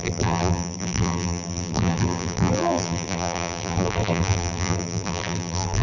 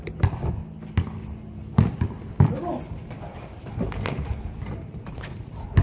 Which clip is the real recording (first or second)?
second